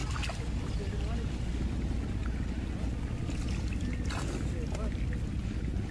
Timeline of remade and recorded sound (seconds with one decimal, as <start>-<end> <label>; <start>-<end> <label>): 0.0-5.9 recorded